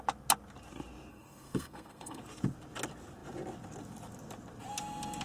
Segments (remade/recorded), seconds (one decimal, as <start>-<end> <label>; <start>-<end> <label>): 0.0-1.1 recorded; 1.1-2.2 remade; 2.2-5.2 recorded